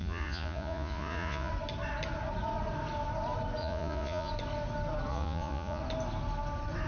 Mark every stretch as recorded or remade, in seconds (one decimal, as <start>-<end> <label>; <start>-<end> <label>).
0.0-1.5 remade; 1.5-3.6 recorded; 3.6-4.3 remade; 4.3-5.1 recorded; 5.1-5.8 remade; 5.8-6.9 recorded